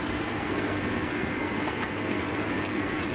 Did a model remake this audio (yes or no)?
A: yes